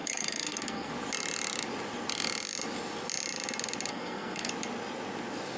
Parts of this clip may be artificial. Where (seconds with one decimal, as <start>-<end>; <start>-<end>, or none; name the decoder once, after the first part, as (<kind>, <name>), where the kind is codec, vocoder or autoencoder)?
0.0-0.9 (codec, SNAC); 3.9-4.5